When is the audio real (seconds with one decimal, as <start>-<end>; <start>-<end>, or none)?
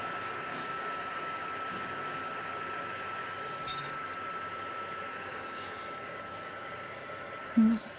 0.0-0.5; 1.4-3.2; 3.9-5.3; 6.5-8.0